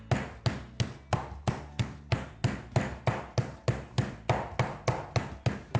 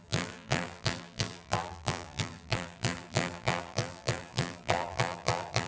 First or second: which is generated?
second